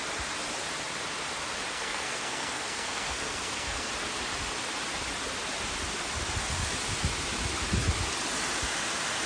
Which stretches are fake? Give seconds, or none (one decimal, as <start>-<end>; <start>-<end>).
1.7-3.9